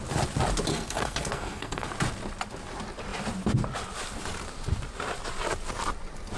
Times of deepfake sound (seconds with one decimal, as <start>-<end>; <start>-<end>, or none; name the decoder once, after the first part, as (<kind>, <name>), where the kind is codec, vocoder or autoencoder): 0.7-1.9 (codec, SNAC)